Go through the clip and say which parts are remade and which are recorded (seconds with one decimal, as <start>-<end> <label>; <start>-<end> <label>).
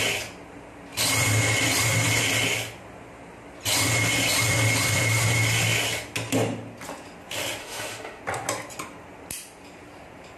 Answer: 0.0-7.6 recorded; 7.6-8.2 remade; 8.2-10.4 recorded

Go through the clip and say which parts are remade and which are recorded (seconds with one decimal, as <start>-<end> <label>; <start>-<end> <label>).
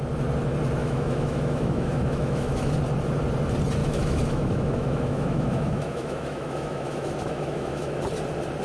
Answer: 0.0-0.8 recorded; 0.8-2.7 remade; 2.7-3.8 recorded; 3.8-8.0 remade; 8.0-8.6 recorded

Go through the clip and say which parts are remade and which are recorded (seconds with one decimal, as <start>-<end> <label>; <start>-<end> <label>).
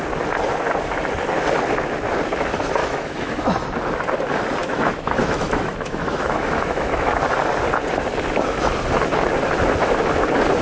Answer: 0.0-2.8 recorded; 2.8-3.7 remade; 3.7-4.6 recorded; 4.6-7.1 remade; 7.1-10.6 recorded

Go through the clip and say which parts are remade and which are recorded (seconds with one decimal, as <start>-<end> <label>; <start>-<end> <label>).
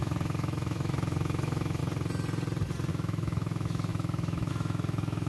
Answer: 0.0-1.8 remade; 1.8-2.9 recorded; 2.9-5.3 remade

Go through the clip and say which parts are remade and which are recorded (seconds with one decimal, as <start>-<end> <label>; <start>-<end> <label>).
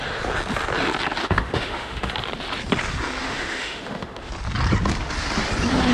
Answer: 0.0-1.2 recorded; 1.2-2.1 remade; 2.1-3.2 recorded; 3.2-4.3 remade; 4.3-5.9 recorded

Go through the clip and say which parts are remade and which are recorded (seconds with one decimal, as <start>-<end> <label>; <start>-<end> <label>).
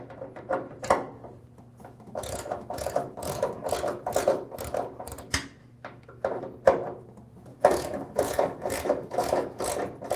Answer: 0.0-1.8 recorded; 1.8-3.4 remade; 3.4-5.6 recorded; 5.6-6.4 remade; 6.4-7.5 recorded; 7.5-9.6 remade; 9.6-10.2 recorded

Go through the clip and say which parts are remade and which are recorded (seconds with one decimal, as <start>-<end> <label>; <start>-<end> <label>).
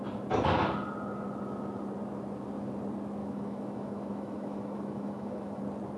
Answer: 0.0-3.2 recorded; 3.2-5.6 remade; 5.6-6.0 recorded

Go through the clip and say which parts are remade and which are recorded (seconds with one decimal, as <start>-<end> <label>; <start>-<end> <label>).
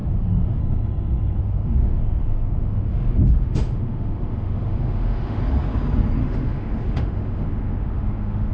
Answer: 0.0-0.6 remade; 0.6-1.4 recorded; 1.4-5.4 remade; 5.4-6.2 recorded; 6.2-8.5 remade